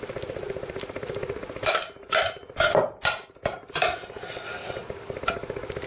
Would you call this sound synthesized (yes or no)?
no